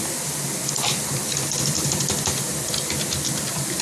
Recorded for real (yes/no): yes